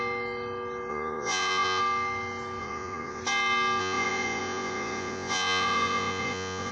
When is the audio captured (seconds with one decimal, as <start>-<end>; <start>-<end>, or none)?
0.0-0.9; 1.8-2.6; 3.2-3.8